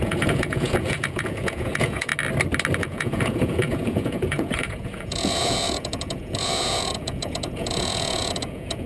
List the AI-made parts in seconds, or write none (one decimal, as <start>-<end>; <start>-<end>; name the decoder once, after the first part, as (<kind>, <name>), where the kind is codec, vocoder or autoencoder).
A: 0.0-2.1 (vocoder, Vocos); 2.8-8.9